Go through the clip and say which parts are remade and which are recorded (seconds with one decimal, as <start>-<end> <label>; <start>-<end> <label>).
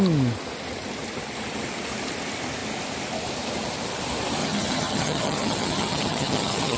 0.0-4.4 recorded; 4.4-6.8 remade